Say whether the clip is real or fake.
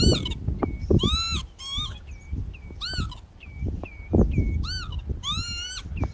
real